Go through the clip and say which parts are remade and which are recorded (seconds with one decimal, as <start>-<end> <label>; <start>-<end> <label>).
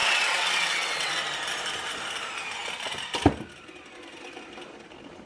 0.0-1.1 remade; 1.1-5.3 recorded